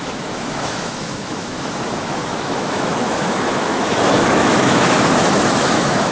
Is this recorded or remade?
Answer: remade